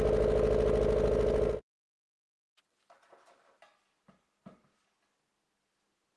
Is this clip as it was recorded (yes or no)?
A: yes